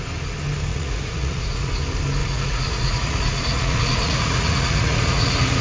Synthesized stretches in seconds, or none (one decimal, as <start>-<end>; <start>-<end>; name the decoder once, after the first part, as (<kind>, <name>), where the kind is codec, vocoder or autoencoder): 0.7-1.7 (vocoder, Vocos); 2.2-5.6